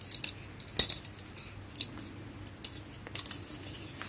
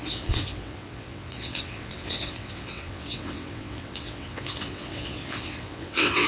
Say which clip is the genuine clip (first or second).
first